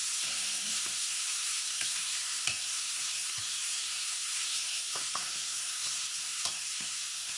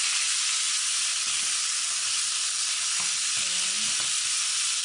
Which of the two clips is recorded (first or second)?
second